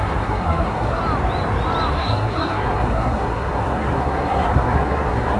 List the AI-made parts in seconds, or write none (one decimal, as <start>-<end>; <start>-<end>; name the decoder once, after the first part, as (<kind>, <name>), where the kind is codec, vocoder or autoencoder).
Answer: 0.0-1.0 (codec, SNAC); 1.9-5.4

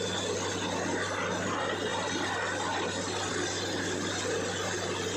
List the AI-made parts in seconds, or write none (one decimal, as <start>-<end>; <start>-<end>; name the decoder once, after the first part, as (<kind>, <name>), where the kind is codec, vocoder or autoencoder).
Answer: none

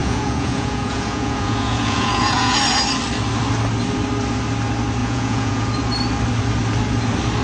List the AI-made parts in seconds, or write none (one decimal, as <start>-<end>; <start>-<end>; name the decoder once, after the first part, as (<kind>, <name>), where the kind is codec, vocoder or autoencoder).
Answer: 0.0-2.6 (vocoder, Vocos); 5.0-5.7

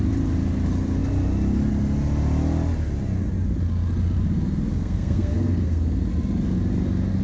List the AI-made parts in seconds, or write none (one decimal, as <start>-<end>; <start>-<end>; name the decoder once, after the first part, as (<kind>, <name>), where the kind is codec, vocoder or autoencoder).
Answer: 4.7-6.0 (codec, SNAC)

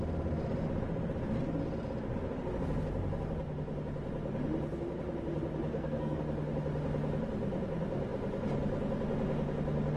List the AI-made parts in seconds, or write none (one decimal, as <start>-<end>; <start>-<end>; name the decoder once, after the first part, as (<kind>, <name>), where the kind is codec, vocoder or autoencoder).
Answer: 5.7-6.2 (codec, SNAC)